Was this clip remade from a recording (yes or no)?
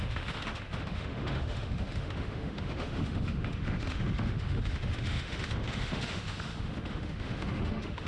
yes